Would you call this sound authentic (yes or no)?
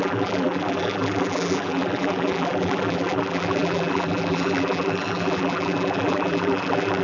no